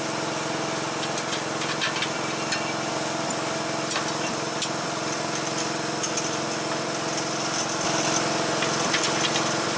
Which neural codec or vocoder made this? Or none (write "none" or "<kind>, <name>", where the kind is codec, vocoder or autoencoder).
none